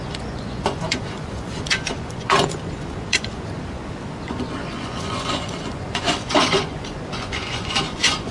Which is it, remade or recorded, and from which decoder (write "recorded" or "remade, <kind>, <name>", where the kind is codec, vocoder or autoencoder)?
remade, vocoder, Vocos